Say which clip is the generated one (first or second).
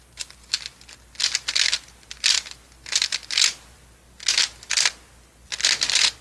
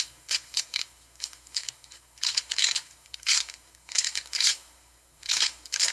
second